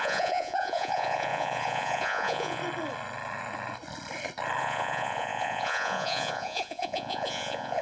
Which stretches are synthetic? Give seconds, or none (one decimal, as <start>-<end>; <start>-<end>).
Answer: 0.0-2.6; 4.6-7.8